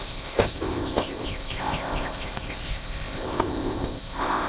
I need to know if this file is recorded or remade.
remade